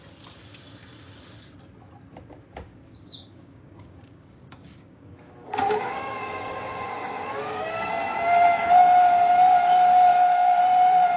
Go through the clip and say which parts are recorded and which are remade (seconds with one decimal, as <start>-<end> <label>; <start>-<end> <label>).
0.0-2.7 recorded; 2.7-7.9 remade; 7.9-10.1 recorded; 10.1-10.6 remade; 10.6-11.2 recorded